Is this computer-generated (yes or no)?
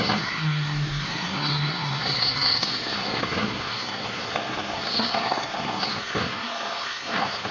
yes